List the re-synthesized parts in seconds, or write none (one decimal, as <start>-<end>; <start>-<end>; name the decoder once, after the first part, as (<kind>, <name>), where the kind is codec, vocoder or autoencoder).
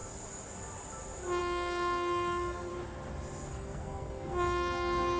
1.4-2.7 (codec, SNAC); 3.5-5.2